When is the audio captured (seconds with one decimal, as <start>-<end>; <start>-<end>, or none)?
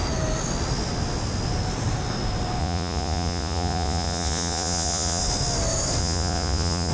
0.0-2.6; 5.2-6.0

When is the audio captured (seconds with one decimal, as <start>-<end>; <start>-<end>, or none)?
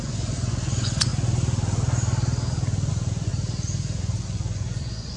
1.1-2.9; 3.3-4.0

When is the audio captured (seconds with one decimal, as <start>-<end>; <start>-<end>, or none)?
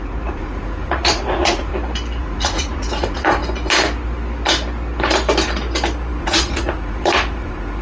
1.7-2.2; 3.4-6.2